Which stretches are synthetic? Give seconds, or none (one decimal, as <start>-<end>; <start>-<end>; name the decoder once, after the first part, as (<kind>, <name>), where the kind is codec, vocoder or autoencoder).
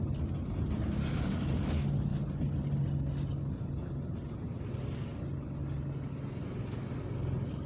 none